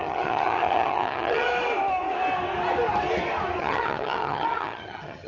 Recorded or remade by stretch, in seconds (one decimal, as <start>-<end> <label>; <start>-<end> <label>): 0.0-1.5 remade; 1.5-3.6 recorded; 3.6-5.3 remade

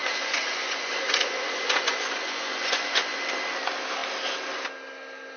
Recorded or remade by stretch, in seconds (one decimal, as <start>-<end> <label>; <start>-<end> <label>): 0.0-3.2 remade; 3.2-5.4 recorded

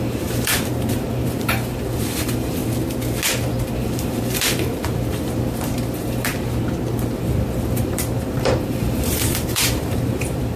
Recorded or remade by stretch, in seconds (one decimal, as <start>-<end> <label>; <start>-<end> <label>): 0.0-2.6 remade; 2.6-3.8 recorded; 3.8-6.3 remade; 6.3-7.8 recorded; 7.8-10.6 remade

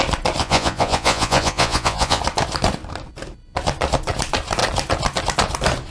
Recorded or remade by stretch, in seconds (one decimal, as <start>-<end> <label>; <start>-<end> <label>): 0.0-0.4 recorded; 0.4-2.2 remade; 2.2-5.9 recorded

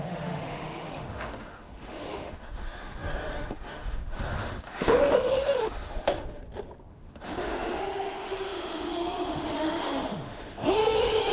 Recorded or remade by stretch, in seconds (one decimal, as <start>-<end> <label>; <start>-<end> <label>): 0.0-6.4 remade; 6.4-6.9 recorded; 6.9-11.3 remade

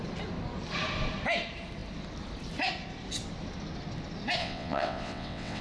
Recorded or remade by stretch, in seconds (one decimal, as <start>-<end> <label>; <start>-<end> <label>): 0.0-4.4 recorded; 4.4-5.6 remade

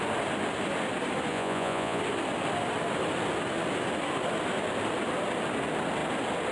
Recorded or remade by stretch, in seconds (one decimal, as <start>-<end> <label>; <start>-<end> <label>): 0.0-1.3 recorded; 1.3-2.0 remade; 2.0-6.5 recorded

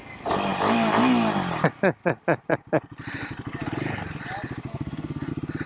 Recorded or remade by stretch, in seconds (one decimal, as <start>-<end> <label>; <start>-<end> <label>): 0.0-4.7 recorded; 4.7-5.3 remade; 5.3-5.7 recorded